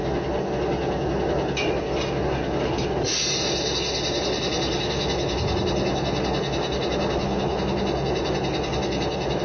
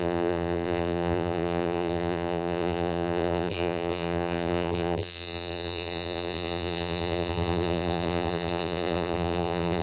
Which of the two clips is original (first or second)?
first